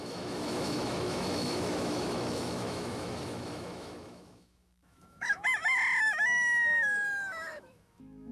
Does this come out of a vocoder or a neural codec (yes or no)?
yes